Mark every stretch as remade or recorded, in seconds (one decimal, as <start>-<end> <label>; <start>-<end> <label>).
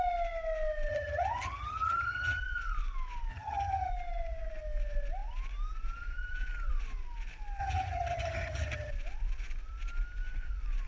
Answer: 0.0-0.9 recorded; 0.9-2.4 remade; 2.4-3.3 recorded; 3.3-3.9 remade; 3.9-7.6 recorded; 7.6-8.9 remade; 8.9-10.9 recorded